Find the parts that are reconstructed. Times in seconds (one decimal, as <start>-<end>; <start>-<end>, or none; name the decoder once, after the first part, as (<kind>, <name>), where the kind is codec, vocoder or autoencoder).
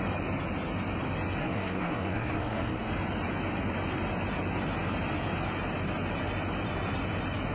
1.4-2.9 (codec, SNAC)